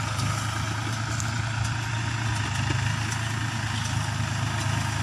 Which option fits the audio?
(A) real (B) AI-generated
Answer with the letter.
A